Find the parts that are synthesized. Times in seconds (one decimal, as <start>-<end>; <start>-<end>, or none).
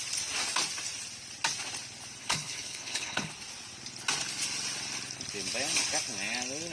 2.2-3.3